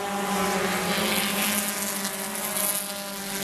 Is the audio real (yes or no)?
yes